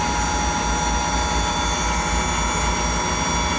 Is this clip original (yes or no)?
yes